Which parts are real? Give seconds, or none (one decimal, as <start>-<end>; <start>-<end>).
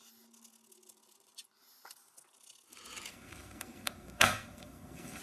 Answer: 0.0-3.1